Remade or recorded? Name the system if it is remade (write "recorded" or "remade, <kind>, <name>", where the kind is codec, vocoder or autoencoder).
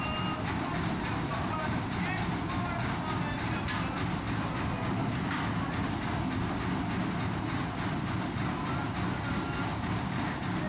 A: recorded